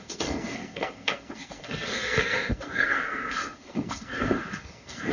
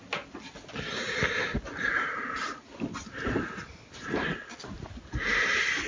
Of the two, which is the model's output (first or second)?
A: first